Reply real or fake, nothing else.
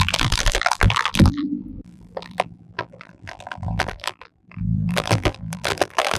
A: fake